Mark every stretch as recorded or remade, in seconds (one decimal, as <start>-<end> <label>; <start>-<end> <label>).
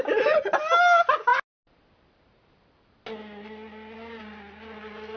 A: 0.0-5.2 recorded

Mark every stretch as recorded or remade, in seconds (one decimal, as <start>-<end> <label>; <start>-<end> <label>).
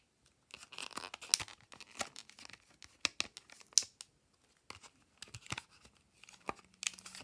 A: 0.0-7.2 recorded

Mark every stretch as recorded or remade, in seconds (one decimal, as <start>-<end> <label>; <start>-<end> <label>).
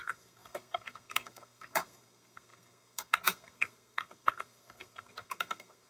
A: 0.0-5.9 remade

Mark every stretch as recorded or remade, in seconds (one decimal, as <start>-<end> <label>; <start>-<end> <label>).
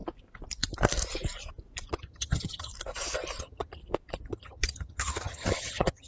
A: 0.0-1.9 recorded; 1.9-2.7 remade; 2.7-3.4 recorded; 3.4-3.8 remade; 3.8-4.3 recorded; 4.3-6.1 remade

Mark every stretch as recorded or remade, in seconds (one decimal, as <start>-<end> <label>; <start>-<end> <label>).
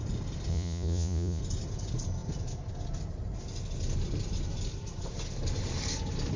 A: 0.0-0.5 recorded; 0.5-1.4 remade; 1.4-6.4 recorded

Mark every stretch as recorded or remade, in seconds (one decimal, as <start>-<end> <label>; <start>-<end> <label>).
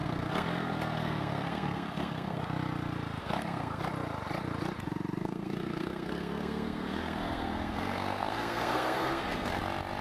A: 0.0-2.4 remade; 2.4-3.2 recorded; 3.2-3.8 remade; 3.8-5.2 recorded; 5.2-9.6 remade; 9.6-10.0 recorded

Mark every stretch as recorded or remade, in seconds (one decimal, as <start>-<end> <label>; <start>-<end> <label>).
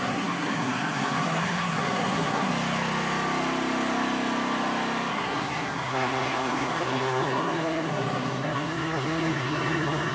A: 0.0-2.5 remade; 2.5-5.1 recorded; 5.1-10.1 remade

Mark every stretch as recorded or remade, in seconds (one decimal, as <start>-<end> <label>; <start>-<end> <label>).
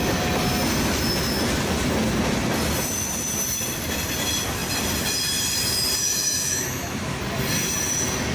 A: 0.0-6.0 recorded; 6.0-7.2 remade; 7.2-8.3 recorded